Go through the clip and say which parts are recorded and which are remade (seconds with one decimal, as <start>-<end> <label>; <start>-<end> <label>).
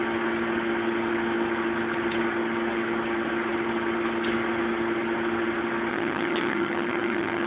0.0-5.9 recorded; 5.9-7.5 remade